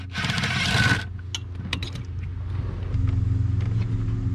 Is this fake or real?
real